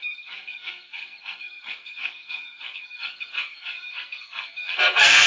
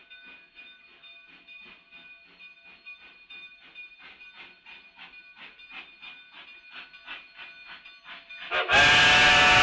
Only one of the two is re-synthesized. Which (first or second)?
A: first